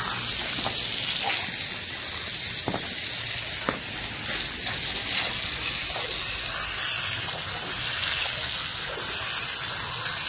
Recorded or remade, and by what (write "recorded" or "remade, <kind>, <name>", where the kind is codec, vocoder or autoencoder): recorded